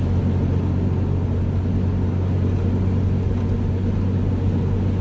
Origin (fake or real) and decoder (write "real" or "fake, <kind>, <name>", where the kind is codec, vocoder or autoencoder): real